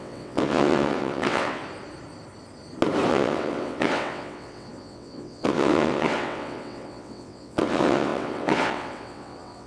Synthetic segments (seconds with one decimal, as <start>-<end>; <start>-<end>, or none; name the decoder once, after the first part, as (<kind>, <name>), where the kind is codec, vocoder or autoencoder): 0.0-1.6 (vocoder, WaveNeXt); 3.1-9.7